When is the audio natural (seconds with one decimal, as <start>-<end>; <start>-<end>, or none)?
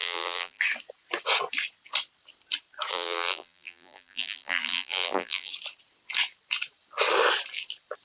0.6-2.9; 5.5-8.0